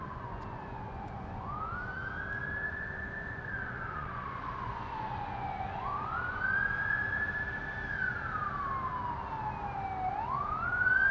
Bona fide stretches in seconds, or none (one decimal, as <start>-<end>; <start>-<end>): 2.0-2.7; 7.0-10.4